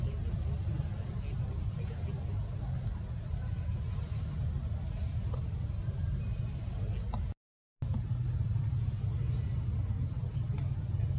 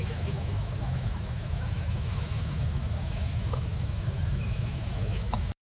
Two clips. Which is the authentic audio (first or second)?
first